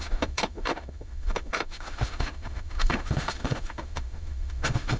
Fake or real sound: fake